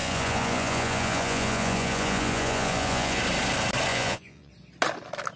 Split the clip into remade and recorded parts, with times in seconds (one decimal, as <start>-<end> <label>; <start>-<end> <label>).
0.0-3.2 remade; 3.2-3.9 recorded; 3.9-4.5 remade; 4.5-5.4 recorded